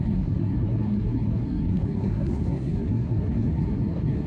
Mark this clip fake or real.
fake